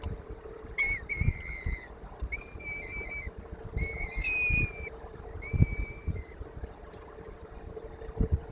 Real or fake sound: fake